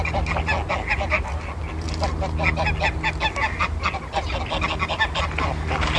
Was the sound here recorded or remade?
recorded